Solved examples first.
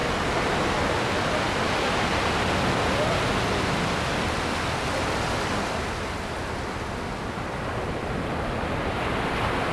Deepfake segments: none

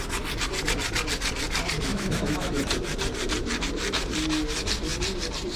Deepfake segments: 1.9-2.6 (autoencoder, DAC-VAE)

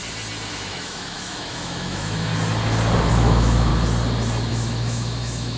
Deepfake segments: 0.5-2.3 (autoencoder, DAC-VAE); 3.1-3.7; 4.5-5.6

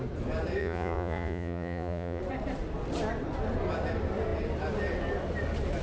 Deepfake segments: 0.6-2.2 (vocoder, Vocos)